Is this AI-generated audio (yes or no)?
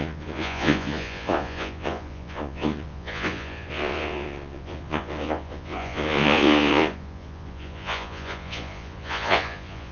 yes